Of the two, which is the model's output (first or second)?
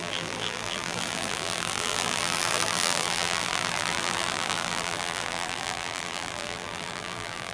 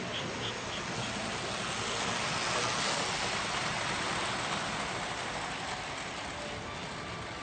first